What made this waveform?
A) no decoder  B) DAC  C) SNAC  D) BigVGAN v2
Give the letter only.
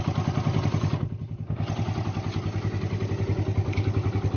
A